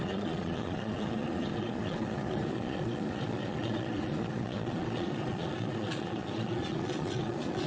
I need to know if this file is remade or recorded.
remade